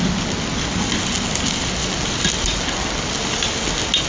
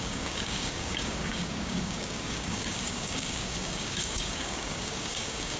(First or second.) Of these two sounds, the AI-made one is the second